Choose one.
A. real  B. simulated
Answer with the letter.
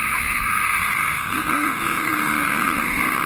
B